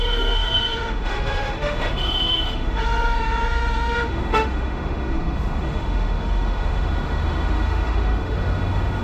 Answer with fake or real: fake